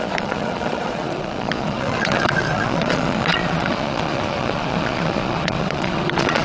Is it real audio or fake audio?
fake